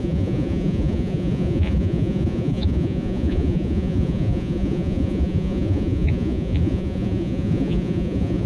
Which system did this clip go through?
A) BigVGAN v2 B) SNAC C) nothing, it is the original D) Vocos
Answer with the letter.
D